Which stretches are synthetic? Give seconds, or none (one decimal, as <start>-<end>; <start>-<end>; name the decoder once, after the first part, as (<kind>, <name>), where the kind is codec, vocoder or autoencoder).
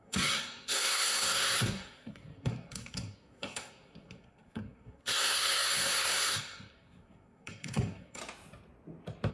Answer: 0.0-8.2 (codec, SNAC)